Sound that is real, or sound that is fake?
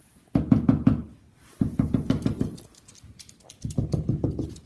real